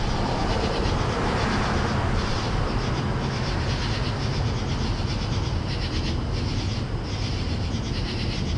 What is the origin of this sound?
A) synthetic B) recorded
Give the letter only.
B